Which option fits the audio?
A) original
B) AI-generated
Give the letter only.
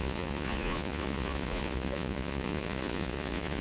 B